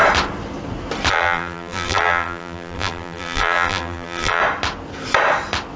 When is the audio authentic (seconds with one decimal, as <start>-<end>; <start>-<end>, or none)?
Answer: 0.0-1.1; 4.4-5.8